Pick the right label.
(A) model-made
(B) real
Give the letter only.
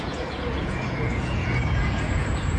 A